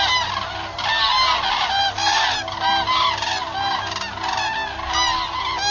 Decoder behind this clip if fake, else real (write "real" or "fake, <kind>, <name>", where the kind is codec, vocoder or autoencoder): real